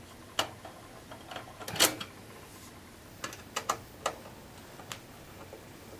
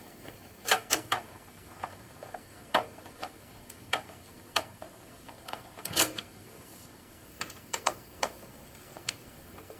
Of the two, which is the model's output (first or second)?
second